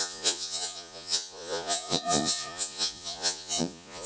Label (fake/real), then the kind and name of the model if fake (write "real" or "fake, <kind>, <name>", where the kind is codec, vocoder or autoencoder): fake, vocoder, Vocos